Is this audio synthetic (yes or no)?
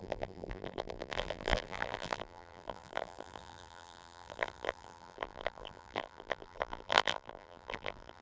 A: yes